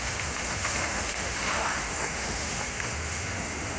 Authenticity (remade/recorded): remade